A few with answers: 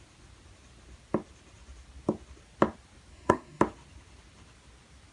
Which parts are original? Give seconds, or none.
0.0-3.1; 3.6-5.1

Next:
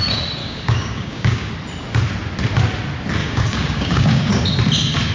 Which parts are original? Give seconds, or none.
0.0-0.4; 1.5-3.2; 4.3-5.1